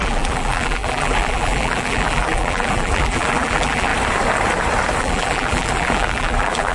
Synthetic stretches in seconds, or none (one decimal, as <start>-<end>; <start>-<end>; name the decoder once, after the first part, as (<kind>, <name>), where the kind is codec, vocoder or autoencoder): 0.0-3.9 (vocoder, BigVGAN v2); 5.0-6.7